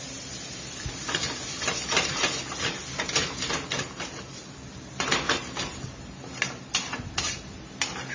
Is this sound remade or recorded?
recorded